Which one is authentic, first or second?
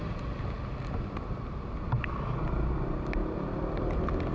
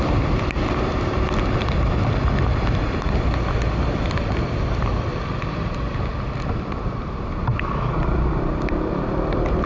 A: first